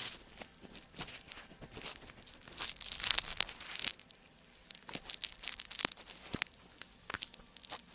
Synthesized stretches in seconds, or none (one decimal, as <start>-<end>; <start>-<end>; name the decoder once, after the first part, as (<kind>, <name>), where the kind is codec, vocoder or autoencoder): 3.9-6.1 (vocoder, BigVGAN v2)